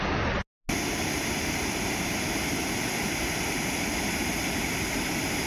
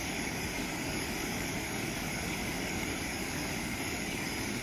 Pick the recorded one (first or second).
first